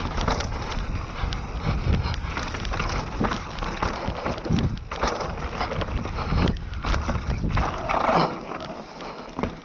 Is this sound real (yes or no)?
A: yes